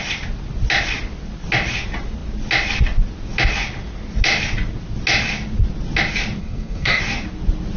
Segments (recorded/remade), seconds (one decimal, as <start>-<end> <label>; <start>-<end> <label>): 0.0-6.4 recorded; 6.4-7.0 remade; 7.0-7.8 recorded